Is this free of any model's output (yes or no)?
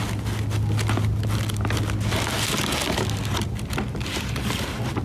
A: yes